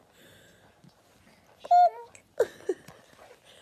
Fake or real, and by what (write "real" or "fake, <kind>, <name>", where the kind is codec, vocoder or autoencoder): real